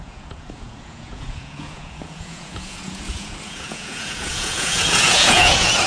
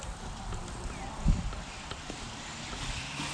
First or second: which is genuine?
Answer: second